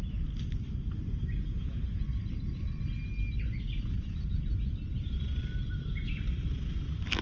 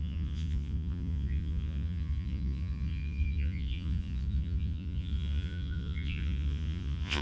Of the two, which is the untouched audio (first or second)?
first